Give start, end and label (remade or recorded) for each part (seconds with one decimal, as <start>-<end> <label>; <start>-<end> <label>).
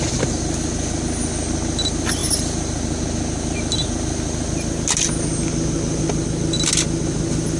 0.0-7.6 recorded